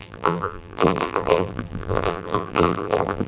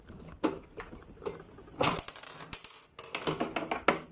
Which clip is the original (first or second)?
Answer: second